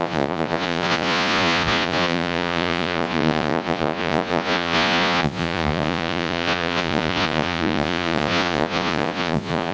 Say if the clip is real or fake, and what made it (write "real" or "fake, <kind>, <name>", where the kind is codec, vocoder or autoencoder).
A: fake, vocoder, Vocos